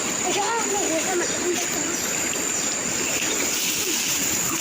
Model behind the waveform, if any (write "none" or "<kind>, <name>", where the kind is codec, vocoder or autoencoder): none